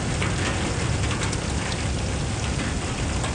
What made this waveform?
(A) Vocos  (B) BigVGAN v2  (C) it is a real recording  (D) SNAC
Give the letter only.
C